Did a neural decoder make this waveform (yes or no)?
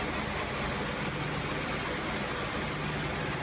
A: no